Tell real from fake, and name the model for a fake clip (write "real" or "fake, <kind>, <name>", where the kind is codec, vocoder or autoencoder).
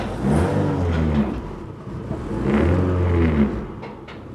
real